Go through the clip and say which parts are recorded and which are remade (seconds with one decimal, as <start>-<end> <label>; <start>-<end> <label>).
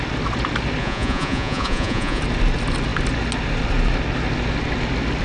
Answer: 0.0-0.8 recorded; 0.8-2.2 remade; 2.2-5.2 recorded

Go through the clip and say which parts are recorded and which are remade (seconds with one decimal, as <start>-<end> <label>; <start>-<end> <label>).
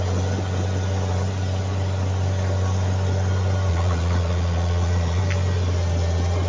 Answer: 0.0-3.7 recorded; 3.7-5.2 remade; 5.2-6.5 recorded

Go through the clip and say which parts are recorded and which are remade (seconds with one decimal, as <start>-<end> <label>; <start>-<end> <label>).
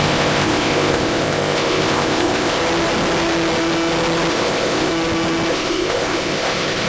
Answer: 0.0-2.6 remade; 2.6-4.3 recorded; 4.3-4.9 remade; 4.9-5.5 recorded; 5.5-6.9 remade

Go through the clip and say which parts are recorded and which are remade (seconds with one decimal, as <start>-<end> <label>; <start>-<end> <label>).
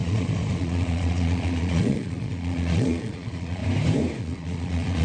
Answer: 0.0-3.6 remade; 3.6-4.2 recorded; 4.2-5.0 remade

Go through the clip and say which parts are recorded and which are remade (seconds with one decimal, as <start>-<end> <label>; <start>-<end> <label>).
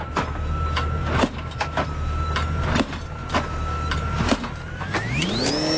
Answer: 0.0-5.8 recorded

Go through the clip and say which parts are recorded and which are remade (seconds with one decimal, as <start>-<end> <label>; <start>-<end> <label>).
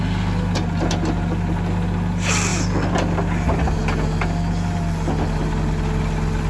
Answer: 0.0-6.5 recorded